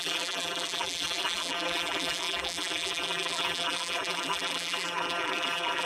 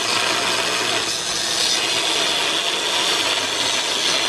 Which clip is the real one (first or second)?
second